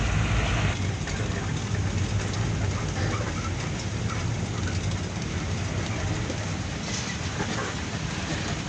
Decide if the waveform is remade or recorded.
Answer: recorded